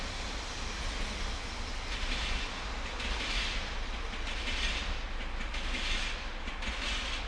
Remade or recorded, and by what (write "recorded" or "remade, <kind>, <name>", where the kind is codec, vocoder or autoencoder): recorded